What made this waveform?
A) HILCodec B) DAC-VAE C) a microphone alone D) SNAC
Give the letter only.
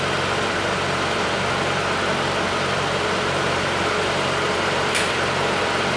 C